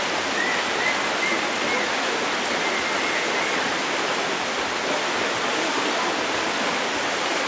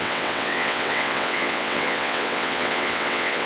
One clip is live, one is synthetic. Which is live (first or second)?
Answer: first